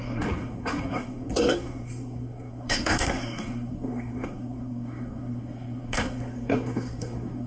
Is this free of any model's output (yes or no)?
no